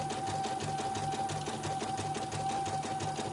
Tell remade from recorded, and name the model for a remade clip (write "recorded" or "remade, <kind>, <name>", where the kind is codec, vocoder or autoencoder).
recorded